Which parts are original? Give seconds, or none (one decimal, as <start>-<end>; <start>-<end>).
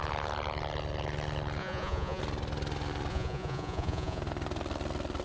0.0-1.6; 2.2-3.1; 4.2-5.2